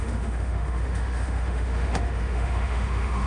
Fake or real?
fake